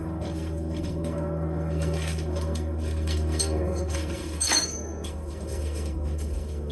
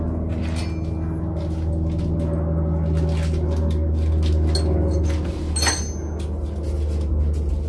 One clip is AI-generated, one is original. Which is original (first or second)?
second